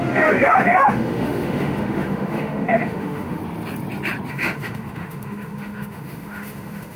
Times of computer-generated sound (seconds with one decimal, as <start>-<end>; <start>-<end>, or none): 0.0-3.4; 4.3-7.0